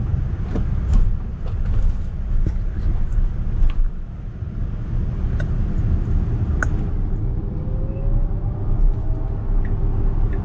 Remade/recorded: recorded